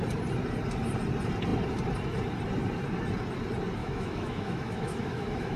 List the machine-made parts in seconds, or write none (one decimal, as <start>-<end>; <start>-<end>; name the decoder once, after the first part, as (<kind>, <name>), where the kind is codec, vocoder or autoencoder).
3.8-5.6 (autoencoder, DAC-VAE)